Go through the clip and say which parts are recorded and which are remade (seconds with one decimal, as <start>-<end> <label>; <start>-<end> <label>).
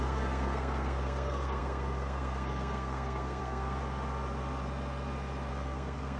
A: 0.0-3.8 remade; 3.8-5.5 recorded; 5.5-6.2 remade